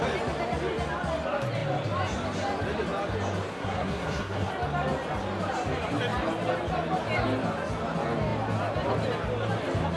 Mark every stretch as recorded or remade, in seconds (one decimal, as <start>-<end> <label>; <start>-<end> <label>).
0.0-3.5 recorded; 3.5-4.5 remade; 4.5-10.0 recorded